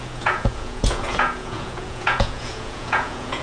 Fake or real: fake